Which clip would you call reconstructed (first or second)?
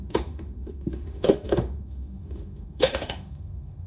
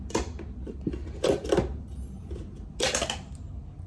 first